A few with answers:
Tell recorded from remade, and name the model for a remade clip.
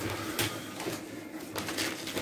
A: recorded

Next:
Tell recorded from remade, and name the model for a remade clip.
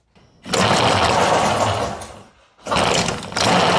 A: recorded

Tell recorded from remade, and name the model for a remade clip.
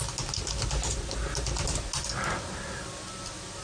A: recorded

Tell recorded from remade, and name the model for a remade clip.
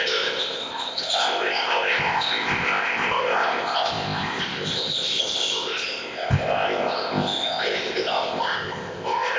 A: remade, codec, ZipCodec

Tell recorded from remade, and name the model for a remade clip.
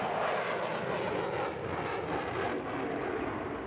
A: recorded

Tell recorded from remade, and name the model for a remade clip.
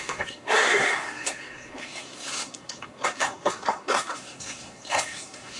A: remade, codec, SNAC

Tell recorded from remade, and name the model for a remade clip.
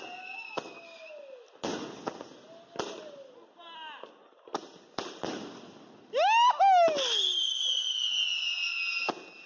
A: recorded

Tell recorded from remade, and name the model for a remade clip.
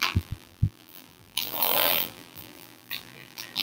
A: remade, vocoder, BigVGAN v2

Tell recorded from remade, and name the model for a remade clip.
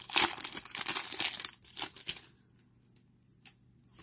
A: recorded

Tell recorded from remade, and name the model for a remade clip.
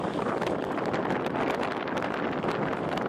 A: recorded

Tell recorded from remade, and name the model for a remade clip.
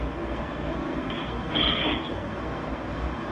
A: remade, codec, SNAC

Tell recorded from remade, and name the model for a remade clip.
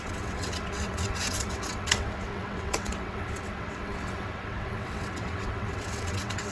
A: remade, vocoder, WaveNeXt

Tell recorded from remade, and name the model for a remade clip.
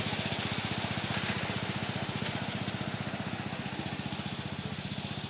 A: recorded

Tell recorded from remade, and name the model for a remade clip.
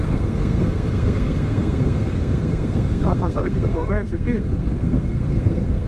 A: remade, codec, SNAC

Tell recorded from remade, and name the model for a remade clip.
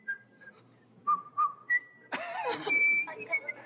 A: remade, vocoder, BigVGAN v2